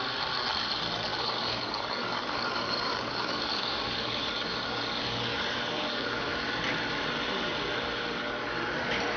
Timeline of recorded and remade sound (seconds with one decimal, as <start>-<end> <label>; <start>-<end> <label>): 0.0-1.1 recorded; 1.1-6.2 remade; 6.2-9.2 recorded